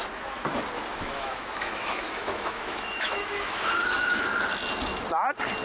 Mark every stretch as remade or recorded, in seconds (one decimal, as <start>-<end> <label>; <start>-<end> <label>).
0.0-0.9 recorded; 0.9-4.3 remade; 4.3-5.6 recorded